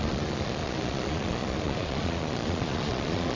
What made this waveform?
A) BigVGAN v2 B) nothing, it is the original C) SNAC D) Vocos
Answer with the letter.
D